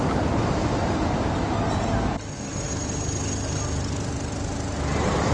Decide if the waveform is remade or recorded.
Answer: recorded